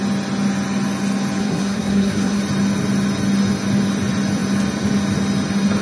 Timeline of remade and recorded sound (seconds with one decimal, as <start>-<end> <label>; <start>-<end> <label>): 0.0-1.4 recorded; 1.4-2.4 remade; 2.4-5.8 recorded

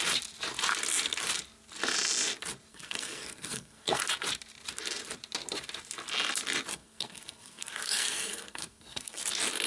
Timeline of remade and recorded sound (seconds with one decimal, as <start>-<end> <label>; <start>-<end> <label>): 0.0-2.7 recorded; 2.7-4.0 remade; 4.0-6.7 recorded; 6.7-9.2 remade; 9.2-9.7 recorded

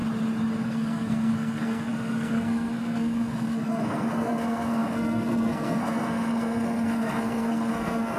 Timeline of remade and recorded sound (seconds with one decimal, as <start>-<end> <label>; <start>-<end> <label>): 0.0-0.6 recorded; 0.6-8.2 remade

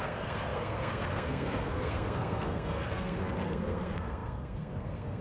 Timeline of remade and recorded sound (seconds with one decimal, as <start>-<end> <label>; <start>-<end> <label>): 0.0-5.2 remade

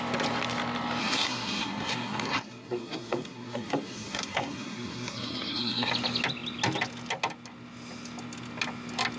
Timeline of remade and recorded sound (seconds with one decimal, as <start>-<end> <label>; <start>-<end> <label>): 0.0-1.0 recorded; 1.0-5.9 remade; 5.9-9.2 recorded

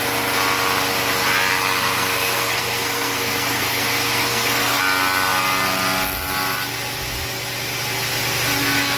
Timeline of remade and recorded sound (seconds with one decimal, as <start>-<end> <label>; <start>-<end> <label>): 0.0-1.5 recorded; 1.5-4.8 remade; 4.8-9.0 recorded